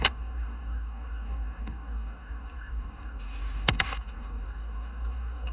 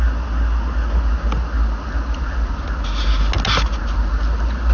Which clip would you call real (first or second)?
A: second